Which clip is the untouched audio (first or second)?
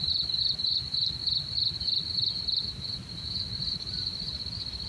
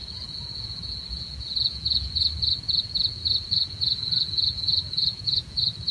first